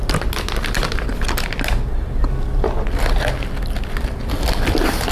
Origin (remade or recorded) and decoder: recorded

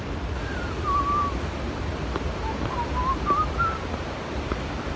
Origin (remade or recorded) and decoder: recorded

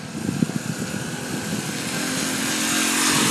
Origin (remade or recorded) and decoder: recorded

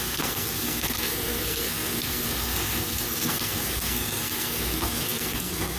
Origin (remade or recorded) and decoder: remade, codec, SNAC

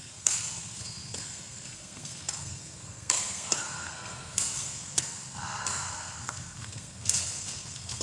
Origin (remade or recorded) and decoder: remade, codec, SNAC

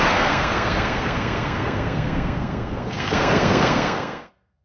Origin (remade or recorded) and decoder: remade, codec, SNAC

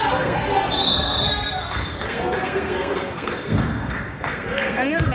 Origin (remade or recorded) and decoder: remade, codec, SNAC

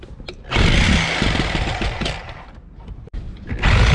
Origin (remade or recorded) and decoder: recorded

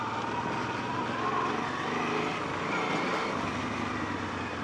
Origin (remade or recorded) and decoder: recorded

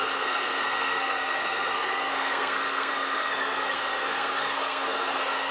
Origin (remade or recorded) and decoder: remade, codec, SNAC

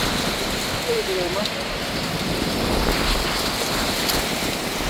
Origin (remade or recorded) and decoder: recorded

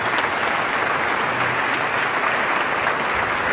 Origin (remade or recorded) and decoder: recorded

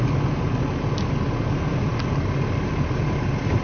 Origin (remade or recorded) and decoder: recorded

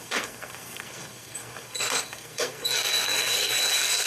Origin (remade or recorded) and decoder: remade, codec, SNAC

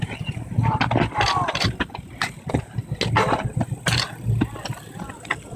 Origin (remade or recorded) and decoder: recorded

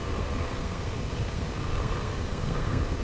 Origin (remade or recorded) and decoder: remade, codec, SNAC